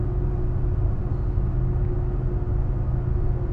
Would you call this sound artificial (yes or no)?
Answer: no